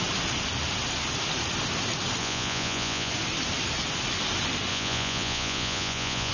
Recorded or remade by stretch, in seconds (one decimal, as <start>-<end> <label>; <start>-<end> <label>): 0.0-2.2 recorded; 2.2-3.1 remade; 3.1-4.7 recorded; 4.7-6.3 remade